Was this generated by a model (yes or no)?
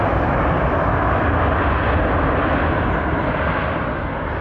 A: no